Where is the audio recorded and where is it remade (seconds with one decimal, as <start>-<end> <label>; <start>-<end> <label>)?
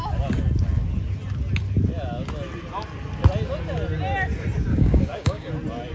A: 0.0-4.7 recorded; 4.7-5.5 remade; 5.5-5.9 recorded